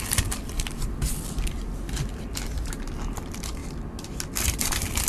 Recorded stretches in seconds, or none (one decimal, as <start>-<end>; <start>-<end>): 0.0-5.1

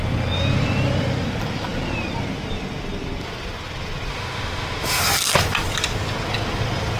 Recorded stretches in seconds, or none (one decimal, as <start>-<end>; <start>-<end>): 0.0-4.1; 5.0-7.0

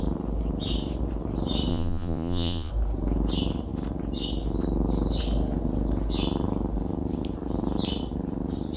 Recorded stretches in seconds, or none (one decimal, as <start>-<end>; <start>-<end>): 0.0-1.7; 2.7-8.8

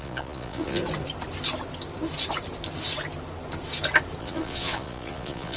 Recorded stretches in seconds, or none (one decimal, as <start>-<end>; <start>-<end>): 0.8-4.2